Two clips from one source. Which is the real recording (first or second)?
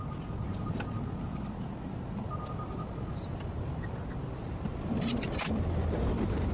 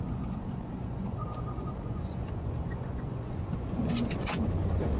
first